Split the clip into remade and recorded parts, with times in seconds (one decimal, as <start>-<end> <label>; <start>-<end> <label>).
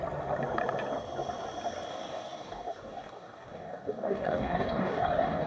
0.0-1.9 recorded; 1.9-5.5 remade